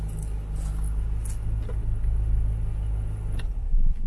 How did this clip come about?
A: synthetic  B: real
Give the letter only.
B